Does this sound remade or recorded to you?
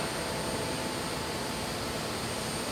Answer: recorded